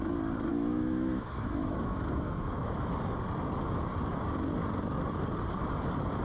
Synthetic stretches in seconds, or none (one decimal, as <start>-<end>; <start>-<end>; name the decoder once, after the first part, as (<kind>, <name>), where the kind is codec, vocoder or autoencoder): 0.5-2.9 (autoencoder, DAC-VAE)